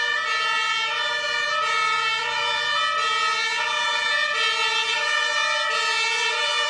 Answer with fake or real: real